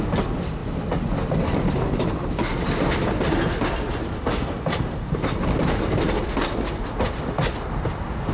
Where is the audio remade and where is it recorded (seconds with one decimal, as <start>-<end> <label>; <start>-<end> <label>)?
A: 0.0-8.3 recorded